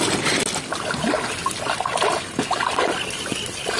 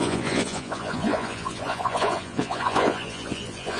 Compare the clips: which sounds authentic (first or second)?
first